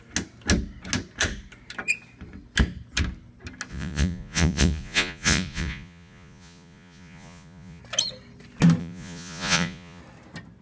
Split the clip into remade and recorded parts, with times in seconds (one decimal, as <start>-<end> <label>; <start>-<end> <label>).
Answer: 0.0-3.7 recorded; 3.7-7.8 remade; 7.8-8.8 recorded; 8.8-10.0 remade; 10.0-10.6 recorded